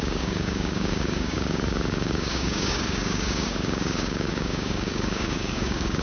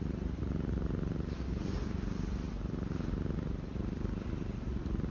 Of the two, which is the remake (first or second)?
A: first